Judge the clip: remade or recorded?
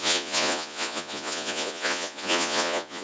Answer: remade